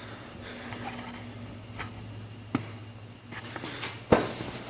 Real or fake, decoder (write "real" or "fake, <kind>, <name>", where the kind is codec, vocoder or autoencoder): real